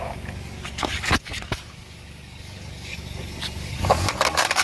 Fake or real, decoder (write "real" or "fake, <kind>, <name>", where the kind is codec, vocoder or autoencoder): fake, codec, DAC